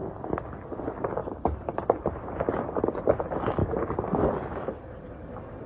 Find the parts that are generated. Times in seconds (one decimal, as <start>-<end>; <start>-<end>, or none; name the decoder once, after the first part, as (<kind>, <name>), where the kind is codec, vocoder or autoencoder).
1.2-3.1 (vocoder, BigVGAN v2); 3.6-4.7